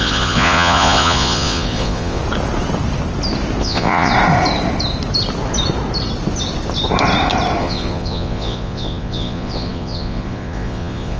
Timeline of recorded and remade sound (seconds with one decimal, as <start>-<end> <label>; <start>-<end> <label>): 0.0-2.2 remade; 2.2-3.6 recorded; 3.6-4.1 remade; 4.1-7.6 recorded; 7.6-11.2 remade